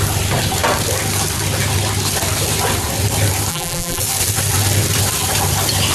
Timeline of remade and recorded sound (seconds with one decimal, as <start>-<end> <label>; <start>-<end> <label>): 0.0-3.5 recorded; 3.5-4.0 remade; 4.0-5.9 recorded